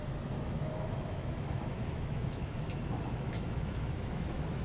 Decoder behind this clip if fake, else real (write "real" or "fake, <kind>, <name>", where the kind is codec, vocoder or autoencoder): fake, autoencoder, DAC-VAE